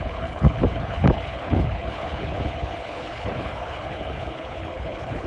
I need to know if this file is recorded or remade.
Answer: remade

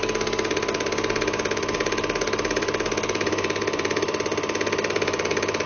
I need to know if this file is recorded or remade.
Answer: recorded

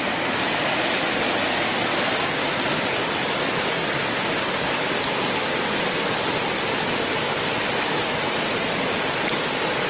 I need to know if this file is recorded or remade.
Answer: recorded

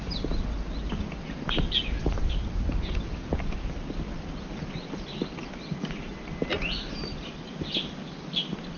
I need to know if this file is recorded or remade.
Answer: recorded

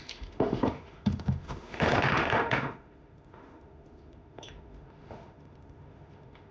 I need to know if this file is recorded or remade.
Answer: remade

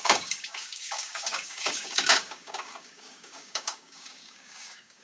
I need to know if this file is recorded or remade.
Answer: remade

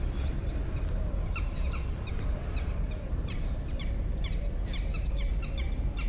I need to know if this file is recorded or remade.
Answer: recorded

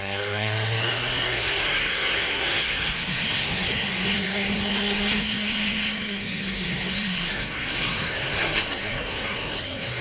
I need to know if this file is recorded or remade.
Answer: remade